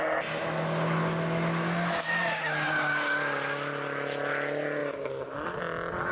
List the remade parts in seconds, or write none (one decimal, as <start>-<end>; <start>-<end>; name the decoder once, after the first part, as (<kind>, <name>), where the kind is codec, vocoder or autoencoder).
none